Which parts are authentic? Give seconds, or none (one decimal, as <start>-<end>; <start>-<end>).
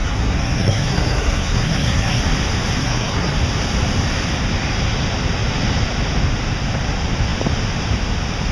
2.2-2.8; 3.3-8.5